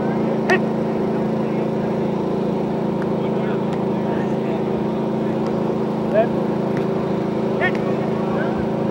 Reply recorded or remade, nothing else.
recorded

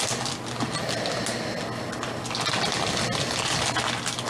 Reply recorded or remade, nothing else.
recorded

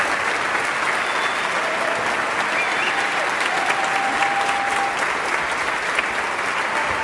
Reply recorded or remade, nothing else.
recorded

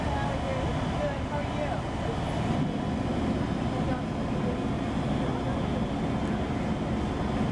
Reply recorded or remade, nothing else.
recorded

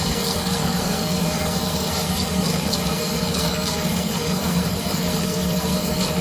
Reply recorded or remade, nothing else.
remade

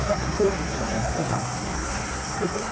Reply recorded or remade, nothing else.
remade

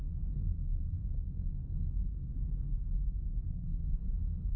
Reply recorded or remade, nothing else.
remade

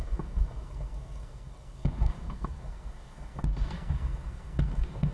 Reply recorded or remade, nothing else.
remade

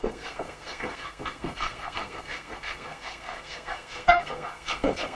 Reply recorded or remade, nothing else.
remade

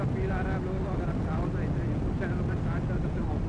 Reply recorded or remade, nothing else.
recorded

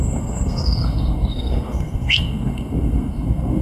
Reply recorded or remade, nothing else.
remade